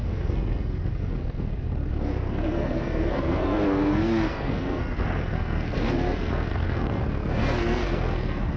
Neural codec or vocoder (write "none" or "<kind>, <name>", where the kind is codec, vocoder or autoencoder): codec, SNAC